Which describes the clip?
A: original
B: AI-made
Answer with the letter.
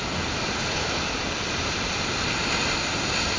A